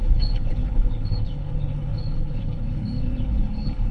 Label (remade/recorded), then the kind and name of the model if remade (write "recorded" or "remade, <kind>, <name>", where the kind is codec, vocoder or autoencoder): remade, codec, HILCodec